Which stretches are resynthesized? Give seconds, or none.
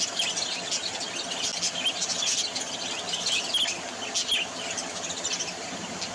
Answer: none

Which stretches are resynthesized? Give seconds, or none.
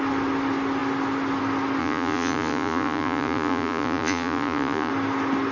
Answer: 1.8-4.9 (vocoder, Vocos)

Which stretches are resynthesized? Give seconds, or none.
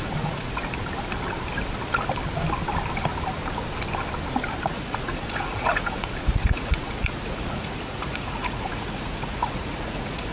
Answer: 0.0-0.6 (vocoder, Vocos); 4.7-10.3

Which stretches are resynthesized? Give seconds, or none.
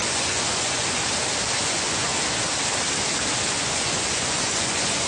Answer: 0.0-1.0 (vocoder, Vocos); 1.6-2.1; 3.5-5.1